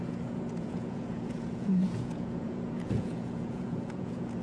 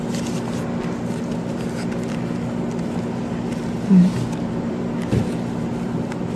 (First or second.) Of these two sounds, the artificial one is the first